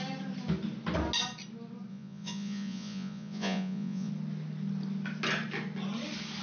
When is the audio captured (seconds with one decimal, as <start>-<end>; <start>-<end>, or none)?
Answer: 0.0-1.9; 4.1-6.4